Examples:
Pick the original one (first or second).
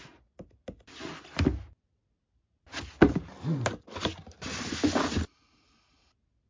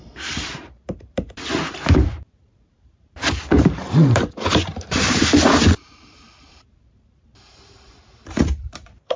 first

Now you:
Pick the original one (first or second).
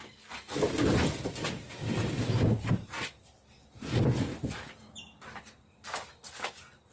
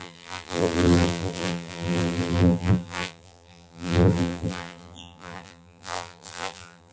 first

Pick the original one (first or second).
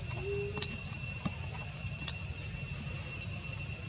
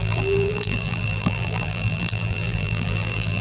first